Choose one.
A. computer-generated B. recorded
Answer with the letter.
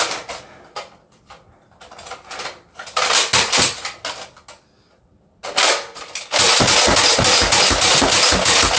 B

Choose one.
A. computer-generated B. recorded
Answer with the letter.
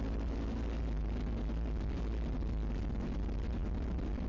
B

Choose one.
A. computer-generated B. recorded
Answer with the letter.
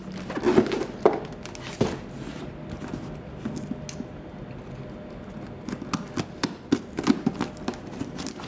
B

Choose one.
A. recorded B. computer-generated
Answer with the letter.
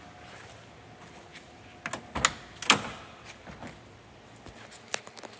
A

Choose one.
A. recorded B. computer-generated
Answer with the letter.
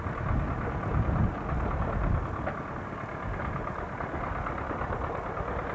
A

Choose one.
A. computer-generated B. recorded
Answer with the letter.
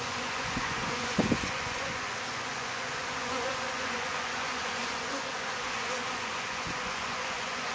A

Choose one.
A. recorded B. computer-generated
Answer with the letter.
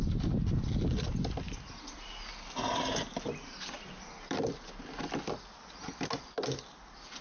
A